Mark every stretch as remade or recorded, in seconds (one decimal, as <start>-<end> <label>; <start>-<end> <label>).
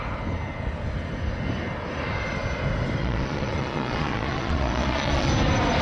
0.0-3.0 recorded; 3.0-5.3 remade; 5.3-5.8 recorded